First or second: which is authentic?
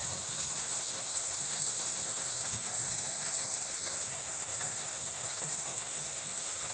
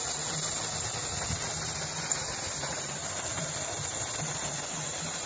second